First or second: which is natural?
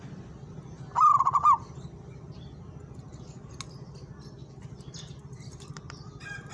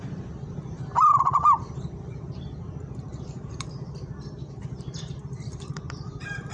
first